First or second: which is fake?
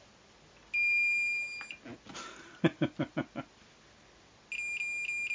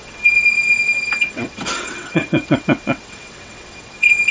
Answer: second